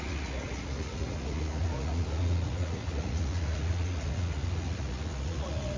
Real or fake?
fake